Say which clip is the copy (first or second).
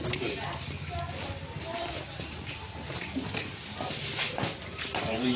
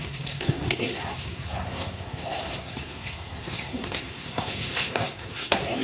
second